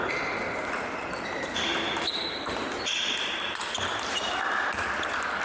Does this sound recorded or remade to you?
recorded